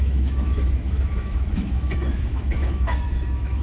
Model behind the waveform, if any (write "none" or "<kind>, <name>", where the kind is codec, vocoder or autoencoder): autoencoder, DAC-VAE